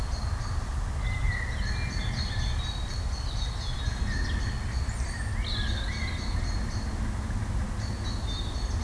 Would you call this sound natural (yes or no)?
yes